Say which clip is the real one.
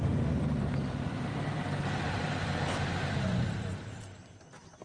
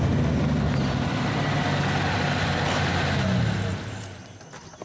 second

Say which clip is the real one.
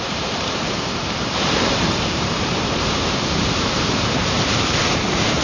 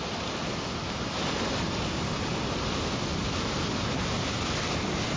second